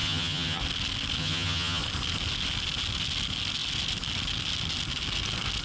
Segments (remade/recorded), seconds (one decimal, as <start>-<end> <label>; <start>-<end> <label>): 0.0-0.6 remade; 0.6-1.2 recorded; 1.2-1.8 remade; 1.8-5.6 recorded